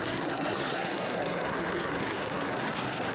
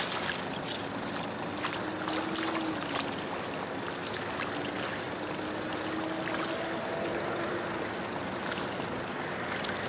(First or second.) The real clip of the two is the second